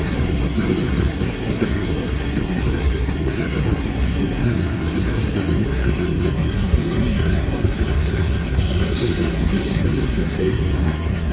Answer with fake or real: fake